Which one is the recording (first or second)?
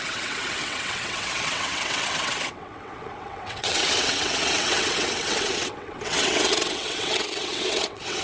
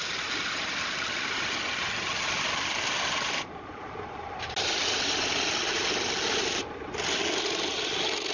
second